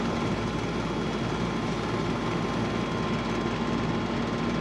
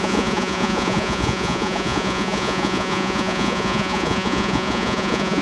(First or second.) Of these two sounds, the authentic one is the first